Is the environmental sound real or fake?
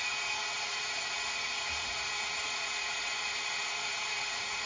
fake